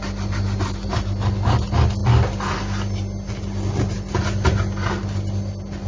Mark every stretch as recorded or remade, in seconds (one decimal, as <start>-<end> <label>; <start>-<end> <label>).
0.0-5.9 recorded